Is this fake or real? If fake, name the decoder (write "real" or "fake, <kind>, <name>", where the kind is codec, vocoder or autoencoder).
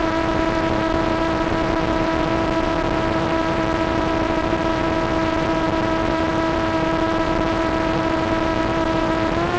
fake, vocoder, BigVGAN v2